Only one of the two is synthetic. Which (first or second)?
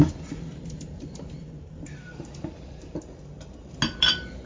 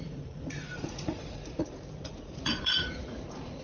second